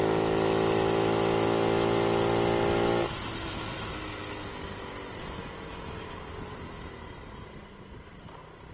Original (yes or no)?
yes